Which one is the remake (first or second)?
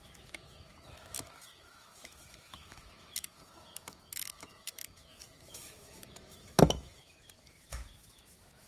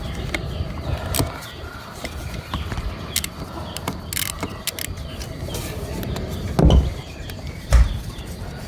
first